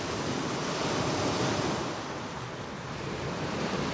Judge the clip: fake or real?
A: real